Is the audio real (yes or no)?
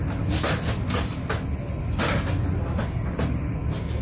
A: yes